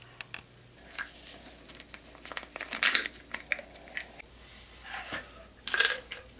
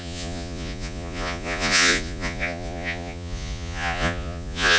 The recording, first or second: first